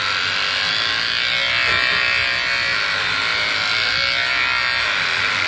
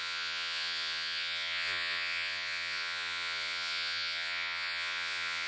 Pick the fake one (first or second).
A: second